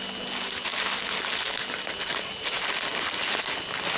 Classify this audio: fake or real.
real